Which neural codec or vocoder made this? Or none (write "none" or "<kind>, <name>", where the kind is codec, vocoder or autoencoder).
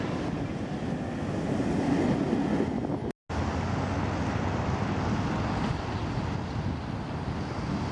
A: none